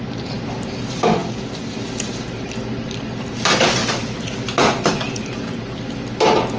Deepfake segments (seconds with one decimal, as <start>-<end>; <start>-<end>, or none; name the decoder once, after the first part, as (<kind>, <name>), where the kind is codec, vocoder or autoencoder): none